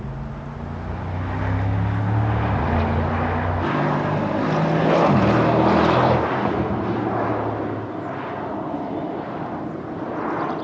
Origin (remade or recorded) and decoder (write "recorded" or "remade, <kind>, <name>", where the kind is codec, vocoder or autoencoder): recorded